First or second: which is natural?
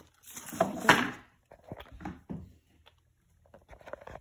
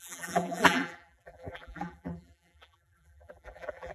first